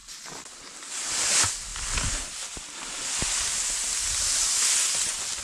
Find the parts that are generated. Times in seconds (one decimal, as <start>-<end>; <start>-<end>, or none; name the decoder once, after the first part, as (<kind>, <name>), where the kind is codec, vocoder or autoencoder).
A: none